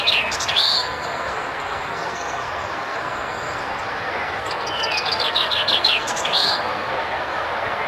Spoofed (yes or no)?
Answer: yes